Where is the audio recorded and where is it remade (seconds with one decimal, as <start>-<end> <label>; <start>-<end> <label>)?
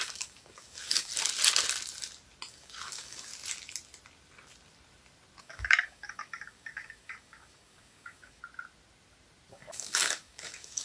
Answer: 0.0-1.1 remade; 1.1-2.5 recorded; 2.5-3.3 remade; 3.3-5.4 recorded; 5.4-8.4 remade; 8.4-9.5 recorded; 9.5-10.8 remade